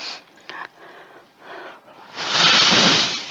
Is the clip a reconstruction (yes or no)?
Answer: no